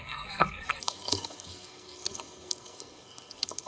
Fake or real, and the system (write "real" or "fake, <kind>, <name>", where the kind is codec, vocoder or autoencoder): fake, codec, SNAC